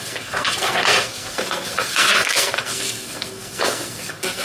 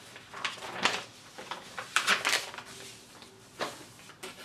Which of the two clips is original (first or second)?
second